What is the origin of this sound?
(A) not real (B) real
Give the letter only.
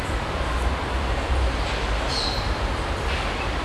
B